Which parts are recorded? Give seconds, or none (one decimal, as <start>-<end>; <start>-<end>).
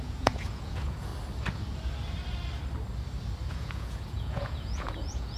1.1-3.5